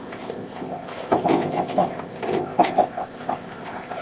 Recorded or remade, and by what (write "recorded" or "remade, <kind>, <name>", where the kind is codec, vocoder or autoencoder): remade, codec, ZipCodec